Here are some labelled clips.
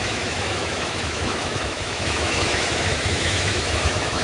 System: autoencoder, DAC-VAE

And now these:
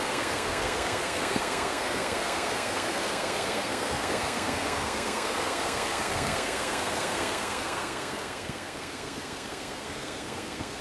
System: codec, SNAC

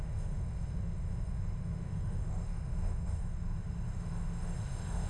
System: autoencoder, DAC-VAE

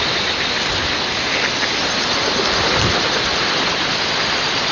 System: none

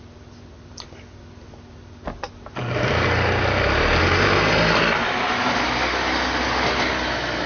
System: none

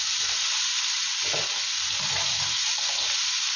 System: none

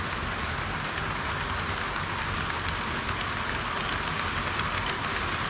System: none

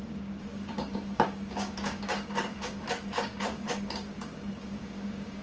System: codec, DAC